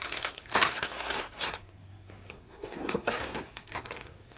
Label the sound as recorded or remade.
remade